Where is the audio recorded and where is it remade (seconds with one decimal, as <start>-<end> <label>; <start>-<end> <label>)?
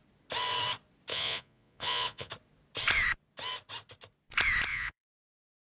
0.0-1.1 recorded; 1.1-2.3 remade; 2.3-4.7 recorded; 4.7-5.6 remade